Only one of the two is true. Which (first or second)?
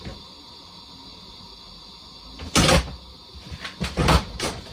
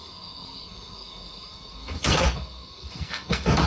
first